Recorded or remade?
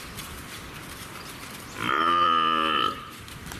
remade